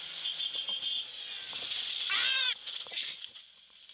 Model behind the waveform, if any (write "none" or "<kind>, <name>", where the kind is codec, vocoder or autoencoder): vocoder, Vocos